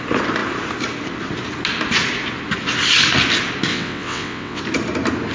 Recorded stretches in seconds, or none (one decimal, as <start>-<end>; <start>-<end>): 0.0-3.7; 4.6-5.3

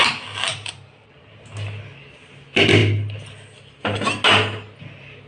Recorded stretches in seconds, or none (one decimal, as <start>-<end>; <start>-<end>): 0.0-0.5; 1.1-5.3

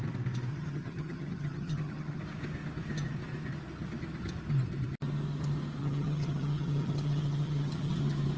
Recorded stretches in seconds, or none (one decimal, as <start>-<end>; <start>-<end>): 0.0-0.5; 2.2-5.8; 8.0-8.4